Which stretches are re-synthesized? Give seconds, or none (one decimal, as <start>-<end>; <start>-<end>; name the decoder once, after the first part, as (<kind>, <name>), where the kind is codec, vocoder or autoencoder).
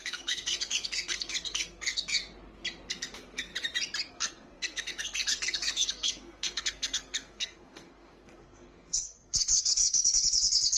0.0-2.2 (codec, SNAC); 2.9-3.5; 4.1-10.8